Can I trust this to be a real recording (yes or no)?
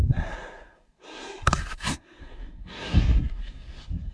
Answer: no